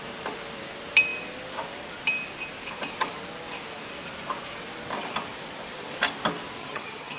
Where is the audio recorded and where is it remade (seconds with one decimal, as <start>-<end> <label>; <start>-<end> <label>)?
0.0-6.6 recorded; 6.6-7.2 remade